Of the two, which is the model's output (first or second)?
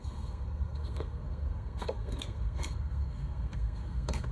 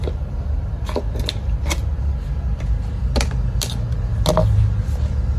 first